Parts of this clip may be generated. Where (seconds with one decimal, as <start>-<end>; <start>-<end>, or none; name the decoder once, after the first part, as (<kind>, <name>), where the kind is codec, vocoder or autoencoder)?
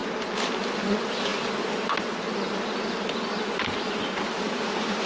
none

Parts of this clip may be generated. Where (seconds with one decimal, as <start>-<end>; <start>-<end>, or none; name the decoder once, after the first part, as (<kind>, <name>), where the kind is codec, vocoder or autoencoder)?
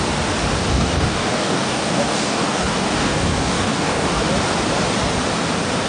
0.7-4.2 (codec, DAC)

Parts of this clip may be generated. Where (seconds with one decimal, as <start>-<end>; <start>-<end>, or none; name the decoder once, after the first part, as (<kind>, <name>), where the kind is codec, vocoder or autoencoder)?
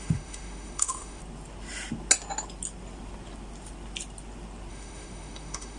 0.0-1.2 (autoencoder, DAC-VAE); 4.7-5.8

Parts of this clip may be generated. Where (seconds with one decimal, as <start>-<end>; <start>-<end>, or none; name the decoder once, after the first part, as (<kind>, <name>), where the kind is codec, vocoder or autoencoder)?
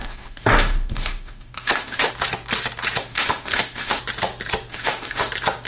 0.0-2.1 (autoencoder, DAC-VAE); 3.0-4.0; 4.7-5.3